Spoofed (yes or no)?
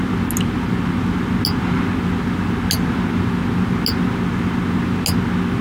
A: no